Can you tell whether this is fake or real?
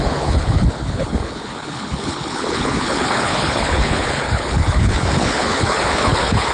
fake